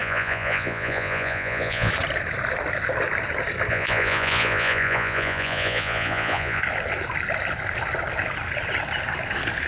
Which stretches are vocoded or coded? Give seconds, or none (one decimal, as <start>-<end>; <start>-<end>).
0.0-1.9; 3.7-6.6